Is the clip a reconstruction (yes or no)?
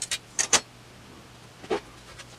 no